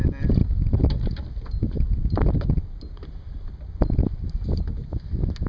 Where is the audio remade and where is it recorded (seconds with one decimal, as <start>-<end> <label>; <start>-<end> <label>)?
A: 0.0-5.5 recorded